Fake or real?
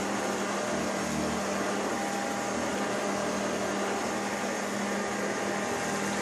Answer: real